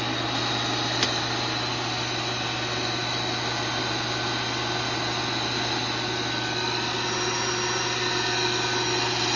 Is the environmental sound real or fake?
real